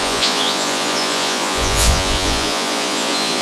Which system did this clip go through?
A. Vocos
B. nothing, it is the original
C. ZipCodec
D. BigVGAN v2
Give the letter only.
A